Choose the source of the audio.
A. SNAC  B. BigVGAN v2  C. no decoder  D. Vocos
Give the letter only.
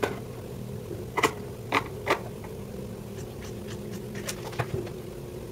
C